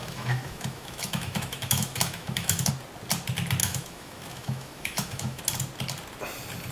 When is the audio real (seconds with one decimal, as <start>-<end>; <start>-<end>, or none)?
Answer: 2.7-3.6; 5.4-6.7